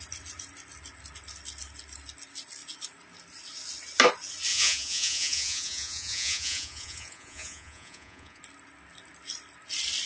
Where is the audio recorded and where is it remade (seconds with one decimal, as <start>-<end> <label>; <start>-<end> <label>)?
0.0-4.5 recorded; 4.5-8.4 remade; 8.4-10.1 recorded